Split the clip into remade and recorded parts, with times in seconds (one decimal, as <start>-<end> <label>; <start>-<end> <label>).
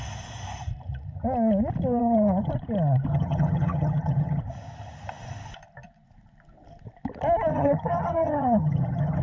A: 0.0-2.0 recorded; 2.0-2.5 remade; 2.5-3.1 recorded; 3.1-4.4 remade; 4.4-7.5 recorded; 7.5-9.2 remade